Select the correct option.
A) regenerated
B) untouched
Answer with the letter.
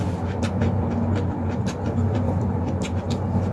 B